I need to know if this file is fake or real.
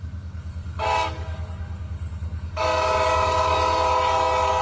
fake